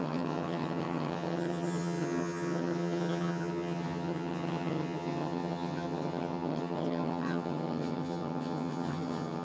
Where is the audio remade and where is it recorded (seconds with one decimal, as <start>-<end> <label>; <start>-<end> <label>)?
0.0-9.4 remade